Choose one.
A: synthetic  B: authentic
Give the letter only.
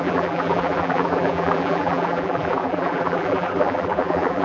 A